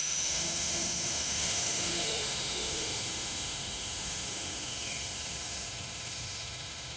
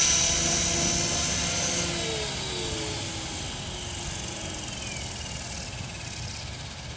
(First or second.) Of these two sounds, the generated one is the first